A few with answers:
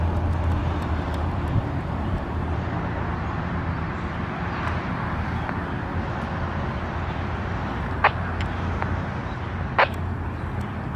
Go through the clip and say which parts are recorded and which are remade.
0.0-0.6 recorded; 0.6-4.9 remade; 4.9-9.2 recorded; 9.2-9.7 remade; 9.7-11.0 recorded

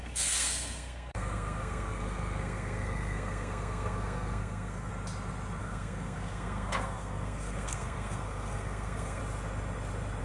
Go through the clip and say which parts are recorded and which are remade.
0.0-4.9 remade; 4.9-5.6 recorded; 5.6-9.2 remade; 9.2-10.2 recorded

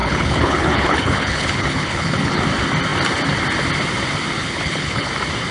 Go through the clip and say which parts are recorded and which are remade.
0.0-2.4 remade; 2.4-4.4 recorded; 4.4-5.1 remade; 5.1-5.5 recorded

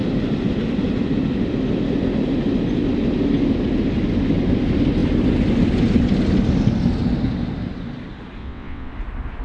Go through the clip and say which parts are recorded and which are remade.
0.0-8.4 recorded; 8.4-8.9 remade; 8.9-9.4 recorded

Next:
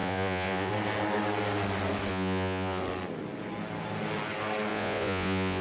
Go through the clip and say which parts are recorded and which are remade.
0.0-0.7 remade; 0.7-2.1 recorded; 2.1-2.8 remade; 2.8-4.7 recorded; 4.7-5.6 remade

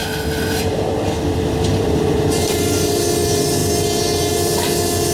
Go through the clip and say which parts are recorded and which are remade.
0.0-2.9 remade; 2.9-5.1 recorded

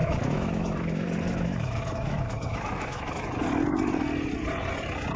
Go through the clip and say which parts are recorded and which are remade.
0.0-3.1 remade; 3.1-5.2 recorded